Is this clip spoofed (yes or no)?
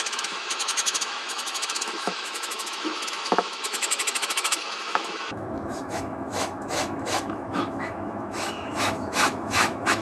yes